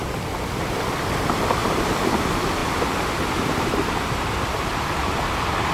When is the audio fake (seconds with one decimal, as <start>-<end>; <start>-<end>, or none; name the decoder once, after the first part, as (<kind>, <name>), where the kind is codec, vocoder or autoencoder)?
0.0-0.8 (vocoder, BigVGAN v2)